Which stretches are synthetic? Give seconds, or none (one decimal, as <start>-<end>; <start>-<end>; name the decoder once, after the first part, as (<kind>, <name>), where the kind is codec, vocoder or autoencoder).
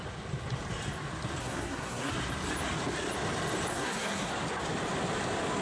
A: 1.4-2.1 (codec, SNAC); 3.7-4.3